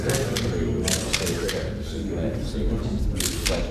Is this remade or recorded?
recorded